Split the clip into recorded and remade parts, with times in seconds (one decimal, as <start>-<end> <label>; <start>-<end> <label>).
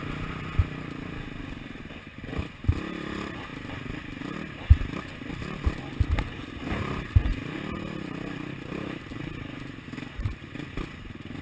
0.0-11.4 recorded